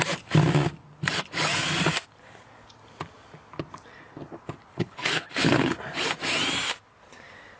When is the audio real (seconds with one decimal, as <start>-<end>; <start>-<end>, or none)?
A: 0.0-4.7; 5.8-7.6